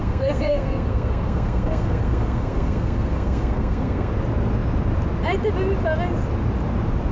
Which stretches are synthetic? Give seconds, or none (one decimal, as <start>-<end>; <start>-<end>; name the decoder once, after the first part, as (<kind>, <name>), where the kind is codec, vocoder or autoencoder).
0.0-4.1 (codec, SNAC)